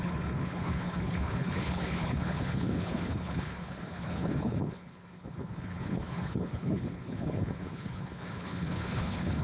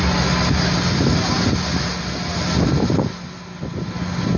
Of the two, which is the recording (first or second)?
second